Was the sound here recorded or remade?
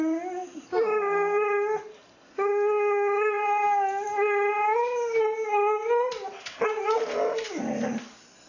recorded